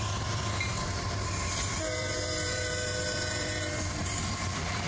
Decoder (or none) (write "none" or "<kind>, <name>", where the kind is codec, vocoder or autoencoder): vocoder, BigVGAN v2